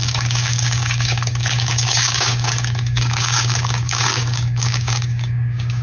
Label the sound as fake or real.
fake